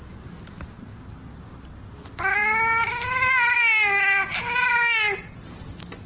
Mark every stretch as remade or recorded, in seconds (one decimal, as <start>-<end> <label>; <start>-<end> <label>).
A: 0.0-6.1 recorded